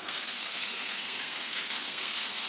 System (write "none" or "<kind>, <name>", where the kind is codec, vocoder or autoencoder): codec, SNAC